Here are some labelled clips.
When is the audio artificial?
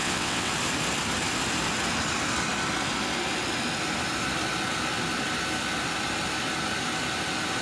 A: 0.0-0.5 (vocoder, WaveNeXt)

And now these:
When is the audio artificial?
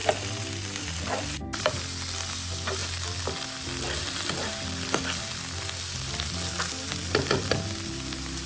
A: none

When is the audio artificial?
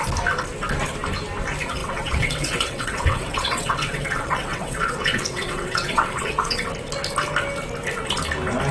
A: 1.8-6.7 (vocoder, WaveNeXt)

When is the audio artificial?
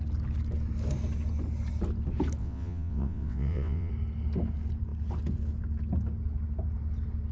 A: 2.4-3.9 (vocoder, WaveNeXt)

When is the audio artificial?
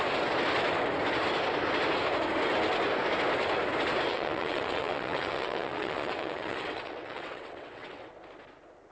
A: 4.1-8.1 (vocoder, WaveNeXt)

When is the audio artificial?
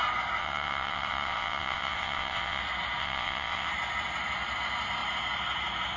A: 0.4-2.6 (vocoder, WaveNeXt); 3.0-3.7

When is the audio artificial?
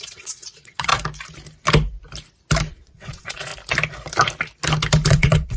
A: 0.0-0.9 (vocoder, WaveNeXt); 2.7-3.5; 5.1-5.6